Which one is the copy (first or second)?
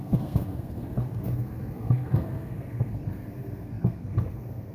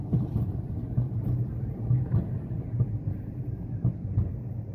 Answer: first